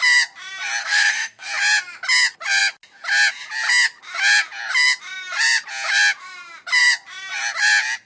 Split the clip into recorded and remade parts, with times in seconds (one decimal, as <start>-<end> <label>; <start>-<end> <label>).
0.0-0.8 recorded; 0.8-1.5 remade; 1.5-8.1 recorded